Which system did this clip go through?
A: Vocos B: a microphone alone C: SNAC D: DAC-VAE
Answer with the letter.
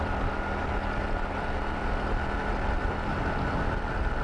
B